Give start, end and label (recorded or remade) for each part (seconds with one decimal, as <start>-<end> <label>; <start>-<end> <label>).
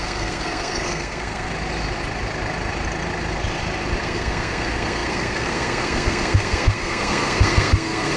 0.0-1.5 remade; 1.5-4.0 recorded; 4.0-8.2 remade